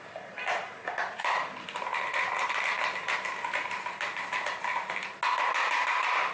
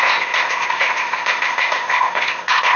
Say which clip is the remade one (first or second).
second